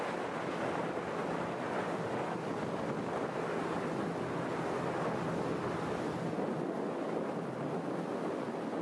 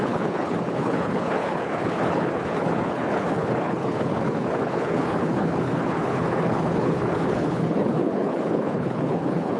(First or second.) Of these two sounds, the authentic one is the first